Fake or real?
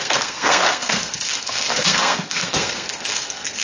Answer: fake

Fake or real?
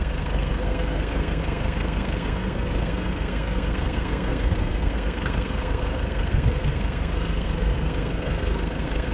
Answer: fake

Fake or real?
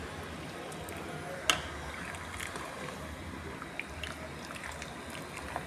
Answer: real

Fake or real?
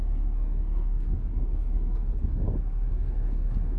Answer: fake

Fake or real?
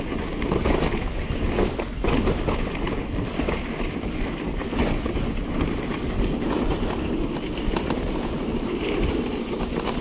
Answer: real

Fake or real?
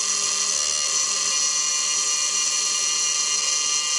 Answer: real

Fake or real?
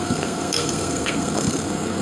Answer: fake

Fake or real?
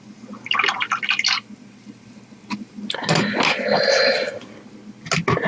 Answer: real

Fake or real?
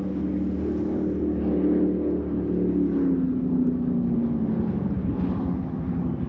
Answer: real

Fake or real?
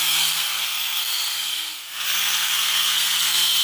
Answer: fake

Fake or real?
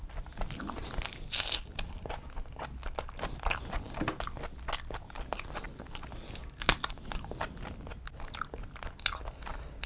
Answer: real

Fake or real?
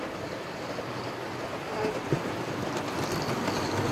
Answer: real